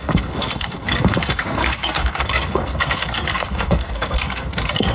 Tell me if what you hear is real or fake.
fake